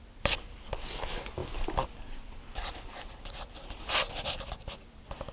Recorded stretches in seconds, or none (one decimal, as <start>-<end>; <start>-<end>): 0.0-5.3

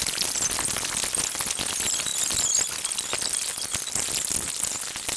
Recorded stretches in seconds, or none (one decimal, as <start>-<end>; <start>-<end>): 0.0-5.2

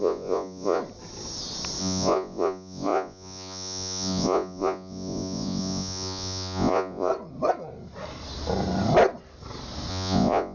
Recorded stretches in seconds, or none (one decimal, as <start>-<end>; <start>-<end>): 0.8-1.8; 7.1-9.9

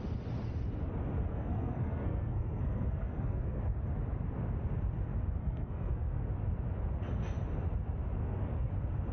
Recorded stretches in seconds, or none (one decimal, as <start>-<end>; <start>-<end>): 0.0-1.3; 3.6-5.4; 6.3-8.2; 8.7-9.1

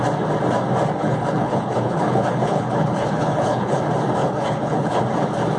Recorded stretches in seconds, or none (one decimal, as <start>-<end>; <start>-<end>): 0.0-1.0; 3.8-4.2; 5.0-5.6

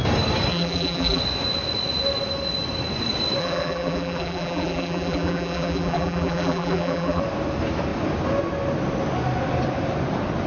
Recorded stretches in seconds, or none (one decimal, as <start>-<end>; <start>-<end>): 0.0-0.5; 1.2-3.4; 7.2-10.5

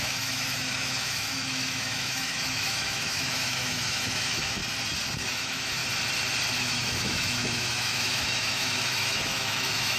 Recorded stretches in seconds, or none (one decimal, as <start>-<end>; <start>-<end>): 4.6-5.2; 5.8-6.6